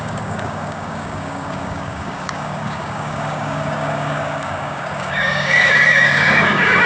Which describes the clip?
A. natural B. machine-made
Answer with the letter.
B